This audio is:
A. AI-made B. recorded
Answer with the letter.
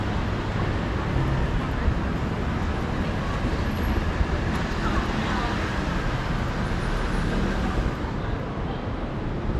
B